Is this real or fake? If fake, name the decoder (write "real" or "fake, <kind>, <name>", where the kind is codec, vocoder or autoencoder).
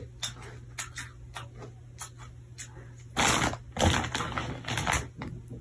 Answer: real